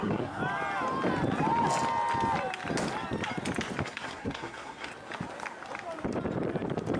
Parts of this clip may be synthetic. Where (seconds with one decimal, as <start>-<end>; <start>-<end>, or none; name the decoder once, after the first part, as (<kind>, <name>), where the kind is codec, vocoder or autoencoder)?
0.0-0.4 (codec, SNAC); 3.8-4.9